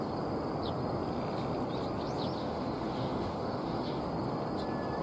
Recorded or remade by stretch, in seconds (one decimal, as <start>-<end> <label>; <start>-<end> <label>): 0.0-2.4 recorded; 2.4-4.0 remade; 4.0-5.0 recorded